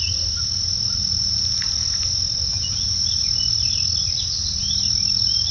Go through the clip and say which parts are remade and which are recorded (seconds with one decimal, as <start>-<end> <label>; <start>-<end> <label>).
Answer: 0.0-5.5 recorded